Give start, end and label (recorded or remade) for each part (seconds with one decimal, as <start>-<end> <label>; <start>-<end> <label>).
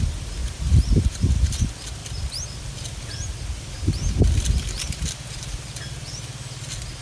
0.0-0.4 recorded; 0.4-1.2 remade; 1.2-7.0 recorded